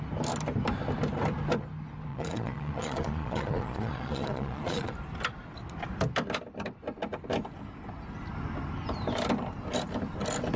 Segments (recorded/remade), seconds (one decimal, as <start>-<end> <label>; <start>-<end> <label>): 0.0-2.1 recorded; 2.1-4.9 remade; 4.9-10.6 recorded